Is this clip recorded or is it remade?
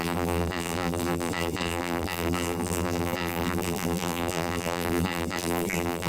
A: remade